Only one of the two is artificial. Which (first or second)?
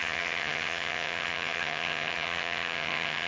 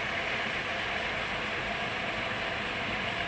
first